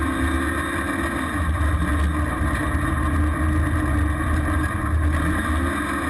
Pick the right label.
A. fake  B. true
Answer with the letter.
B